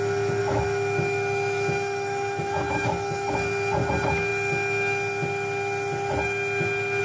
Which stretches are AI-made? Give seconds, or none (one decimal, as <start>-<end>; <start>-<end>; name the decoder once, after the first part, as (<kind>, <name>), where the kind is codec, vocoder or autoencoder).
0.4-3.3 (autoencoder, DAC-VAE)